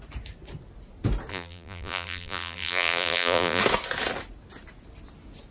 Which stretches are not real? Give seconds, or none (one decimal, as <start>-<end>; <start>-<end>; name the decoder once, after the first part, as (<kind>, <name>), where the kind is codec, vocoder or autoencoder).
1.3-3.6 (vocoder, BigVGAN v2)